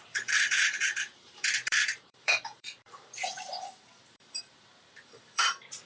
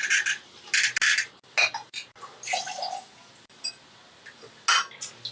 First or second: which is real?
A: second